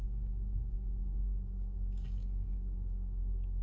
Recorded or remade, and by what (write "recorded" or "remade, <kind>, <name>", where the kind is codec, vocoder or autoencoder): remade, codec, DAC